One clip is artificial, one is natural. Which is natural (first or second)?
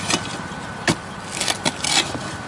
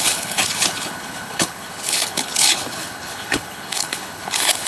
first